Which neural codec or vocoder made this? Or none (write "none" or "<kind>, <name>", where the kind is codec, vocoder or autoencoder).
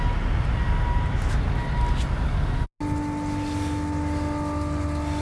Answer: none